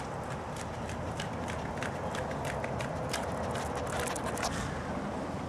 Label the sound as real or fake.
real